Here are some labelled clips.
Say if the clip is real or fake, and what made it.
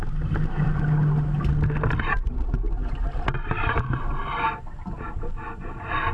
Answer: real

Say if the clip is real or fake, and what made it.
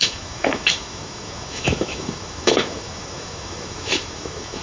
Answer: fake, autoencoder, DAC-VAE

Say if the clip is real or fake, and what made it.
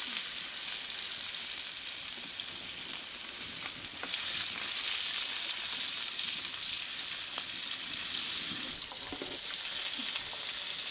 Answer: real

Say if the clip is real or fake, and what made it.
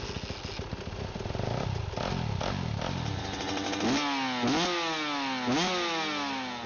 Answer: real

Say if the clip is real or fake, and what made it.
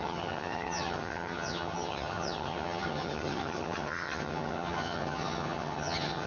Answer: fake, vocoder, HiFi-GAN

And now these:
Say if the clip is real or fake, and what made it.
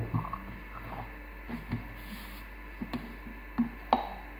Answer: real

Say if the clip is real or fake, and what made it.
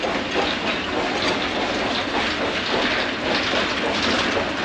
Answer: real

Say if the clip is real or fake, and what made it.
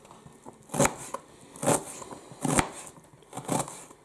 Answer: real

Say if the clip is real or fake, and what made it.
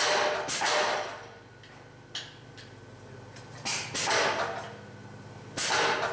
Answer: real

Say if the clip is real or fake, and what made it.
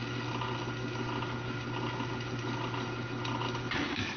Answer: real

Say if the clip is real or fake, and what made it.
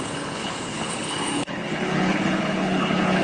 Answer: fake, codec, HILCodec